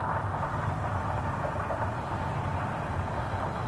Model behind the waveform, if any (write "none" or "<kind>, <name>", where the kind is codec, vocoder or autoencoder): none